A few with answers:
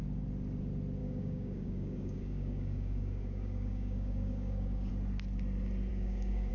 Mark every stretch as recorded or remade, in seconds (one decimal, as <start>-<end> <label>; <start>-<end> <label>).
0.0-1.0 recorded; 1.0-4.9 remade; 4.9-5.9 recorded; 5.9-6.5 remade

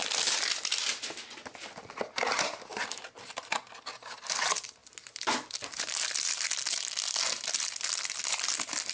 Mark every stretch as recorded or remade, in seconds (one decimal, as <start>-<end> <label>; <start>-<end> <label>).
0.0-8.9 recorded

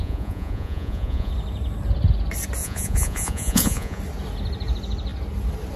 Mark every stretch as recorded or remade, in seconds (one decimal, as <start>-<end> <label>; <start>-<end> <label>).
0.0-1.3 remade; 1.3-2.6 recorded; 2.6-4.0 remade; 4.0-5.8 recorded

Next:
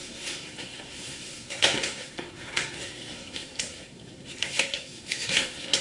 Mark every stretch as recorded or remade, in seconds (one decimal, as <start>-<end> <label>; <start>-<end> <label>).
0.0-5.8 remade